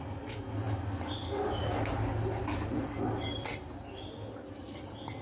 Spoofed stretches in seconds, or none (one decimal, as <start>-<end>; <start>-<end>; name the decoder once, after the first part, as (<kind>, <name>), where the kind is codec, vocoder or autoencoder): none